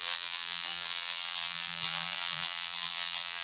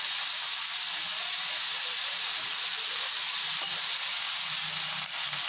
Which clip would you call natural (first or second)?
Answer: second